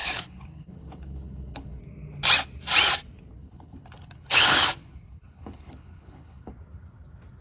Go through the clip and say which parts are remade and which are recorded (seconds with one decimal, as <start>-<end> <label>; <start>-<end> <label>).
0.0-1.8 remade; 1.8-3.4 recorded; 3.4-6.5 remade; 6.5-7.4 recorded